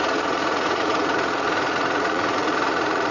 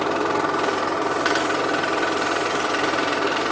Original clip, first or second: second